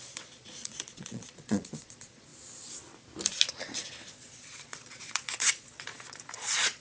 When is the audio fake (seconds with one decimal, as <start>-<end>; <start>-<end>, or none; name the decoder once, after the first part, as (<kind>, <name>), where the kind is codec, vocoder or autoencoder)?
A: 0.0-2.3 (vocoder, Vocos); 4.1-6.8